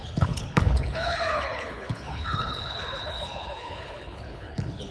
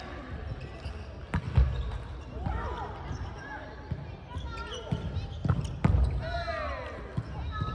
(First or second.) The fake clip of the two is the first